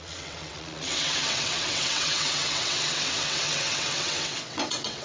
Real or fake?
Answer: fake